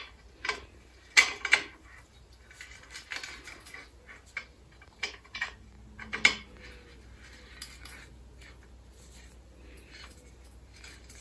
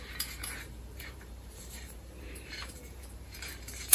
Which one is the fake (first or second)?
second